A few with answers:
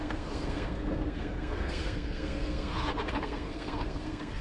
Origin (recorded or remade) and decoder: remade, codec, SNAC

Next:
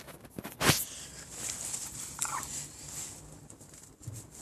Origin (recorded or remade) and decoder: recorded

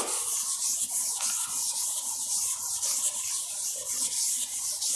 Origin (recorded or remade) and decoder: recorded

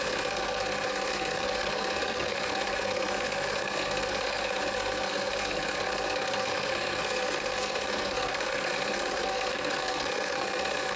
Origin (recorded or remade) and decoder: remade, codec, SNAC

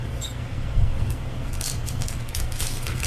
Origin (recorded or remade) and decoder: remade, codec, SNAC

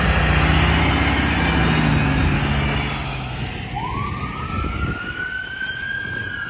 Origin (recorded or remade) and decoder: recorded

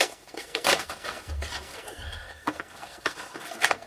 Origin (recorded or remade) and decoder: remade, codec, SNAC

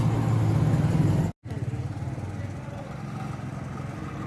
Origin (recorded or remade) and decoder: recorded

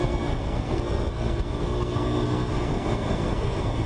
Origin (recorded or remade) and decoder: remade, codec, SNAC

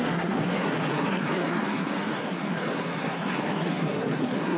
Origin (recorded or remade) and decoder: remade, codec, SNAC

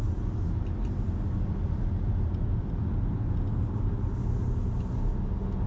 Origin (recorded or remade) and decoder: recorded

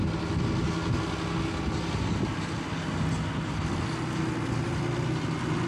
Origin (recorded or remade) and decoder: recorded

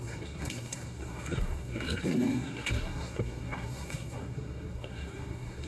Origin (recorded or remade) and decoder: remade, codec, SNAC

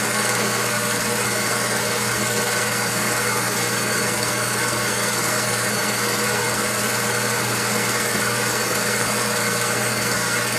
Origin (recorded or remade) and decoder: remade, codec, SNAC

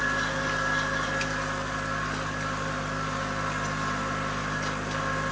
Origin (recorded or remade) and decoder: recorded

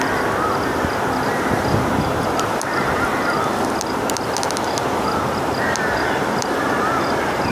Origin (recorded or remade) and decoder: recorded